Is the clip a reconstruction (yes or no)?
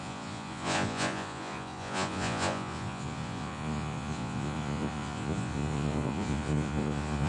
yes